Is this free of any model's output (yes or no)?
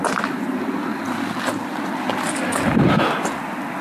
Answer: yes